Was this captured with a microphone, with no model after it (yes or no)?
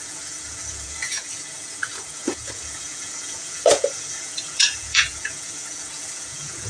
no